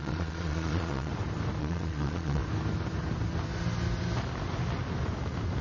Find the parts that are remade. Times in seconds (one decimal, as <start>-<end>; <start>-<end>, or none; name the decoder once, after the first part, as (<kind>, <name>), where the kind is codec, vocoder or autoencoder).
0.0-1.1 (vocoder, Vocos); 1.6-2.4